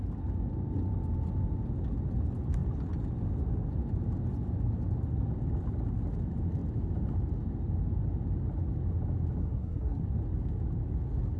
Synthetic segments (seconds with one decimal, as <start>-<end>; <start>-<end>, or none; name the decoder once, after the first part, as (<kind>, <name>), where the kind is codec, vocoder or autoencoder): 9.4-10.0 (codec, SNAC)